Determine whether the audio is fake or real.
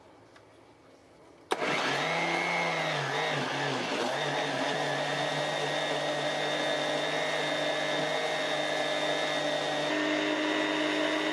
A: real